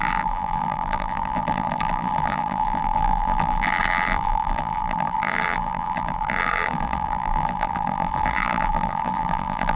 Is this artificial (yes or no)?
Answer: yes